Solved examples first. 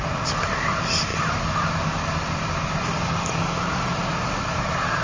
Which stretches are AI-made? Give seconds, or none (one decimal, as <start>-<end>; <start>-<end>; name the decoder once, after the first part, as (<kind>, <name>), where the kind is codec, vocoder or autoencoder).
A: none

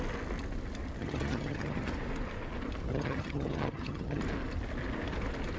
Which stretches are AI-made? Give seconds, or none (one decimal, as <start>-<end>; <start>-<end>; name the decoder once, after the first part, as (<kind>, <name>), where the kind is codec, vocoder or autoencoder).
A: 1.0-1.9 (vocoder, HiFi-GAN); 2.9-4.2

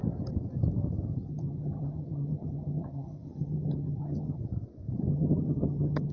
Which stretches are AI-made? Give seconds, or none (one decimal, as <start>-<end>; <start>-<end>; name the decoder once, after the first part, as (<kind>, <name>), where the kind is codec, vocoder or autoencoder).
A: 1.3-4.4 (vocoder, HiFi-GAN); 5.1-6.1

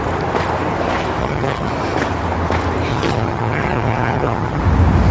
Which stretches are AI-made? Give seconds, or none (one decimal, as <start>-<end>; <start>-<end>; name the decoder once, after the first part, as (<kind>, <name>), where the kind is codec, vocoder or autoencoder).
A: 1.2-1.7 (vocoder, HiFi-GAN); 2.9-4.6

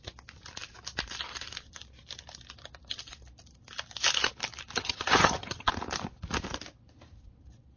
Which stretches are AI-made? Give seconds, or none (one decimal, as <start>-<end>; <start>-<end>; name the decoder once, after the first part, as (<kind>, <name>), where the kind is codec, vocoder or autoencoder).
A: 4.8-5.7 (vocoder, HiFi-GAN)

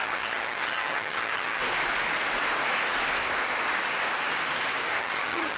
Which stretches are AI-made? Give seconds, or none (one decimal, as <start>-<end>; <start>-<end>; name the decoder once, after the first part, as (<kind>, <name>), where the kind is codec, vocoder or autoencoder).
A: 0.0-1.6 (vocoder, HiFi-GAN); 5.0-5.6